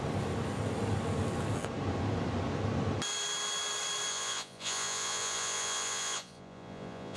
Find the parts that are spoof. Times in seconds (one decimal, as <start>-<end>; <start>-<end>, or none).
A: 4.1-7.2